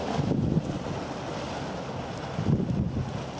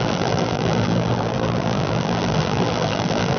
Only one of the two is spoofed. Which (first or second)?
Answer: second